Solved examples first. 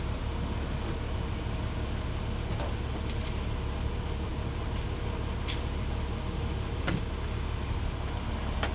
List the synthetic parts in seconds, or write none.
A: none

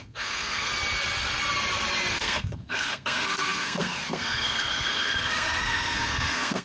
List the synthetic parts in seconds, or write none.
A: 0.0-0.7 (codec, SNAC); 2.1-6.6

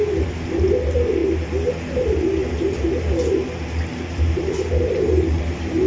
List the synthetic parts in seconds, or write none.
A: none

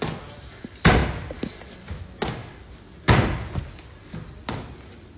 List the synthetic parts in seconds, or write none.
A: none

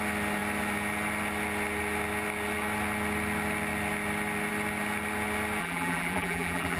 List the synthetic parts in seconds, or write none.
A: 5.6-6.8 (vocoder, BigVGAN v2)

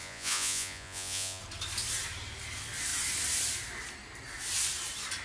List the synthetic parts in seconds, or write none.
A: 0.0-1.4 (vocoder, Vocos)

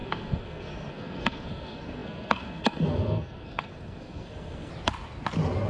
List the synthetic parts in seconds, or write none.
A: 0.0-4.7 (codec, SNAC)